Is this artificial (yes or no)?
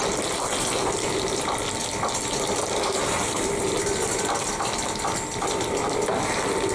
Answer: no